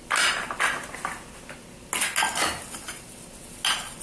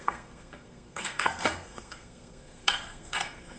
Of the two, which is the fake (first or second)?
second